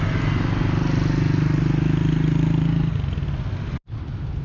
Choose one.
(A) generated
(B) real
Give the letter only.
B